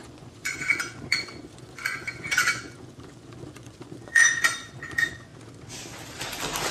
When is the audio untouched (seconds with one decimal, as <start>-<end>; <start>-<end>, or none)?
5.3-6.7